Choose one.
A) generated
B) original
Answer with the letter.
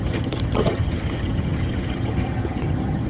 A